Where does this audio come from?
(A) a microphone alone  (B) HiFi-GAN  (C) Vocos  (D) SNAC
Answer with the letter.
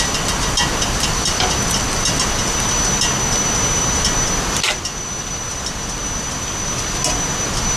A